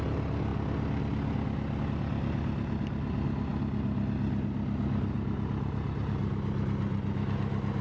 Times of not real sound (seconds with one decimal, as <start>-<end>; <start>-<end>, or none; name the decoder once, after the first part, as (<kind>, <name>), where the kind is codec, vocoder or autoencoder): none

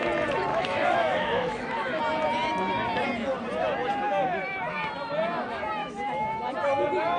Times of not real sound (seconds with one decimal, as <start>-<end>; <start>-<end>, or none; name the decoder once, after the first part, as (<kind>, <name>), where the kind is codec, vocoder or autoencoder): 0.5-2.0 (autoencoder, DAC-VAE); 5.8-6.5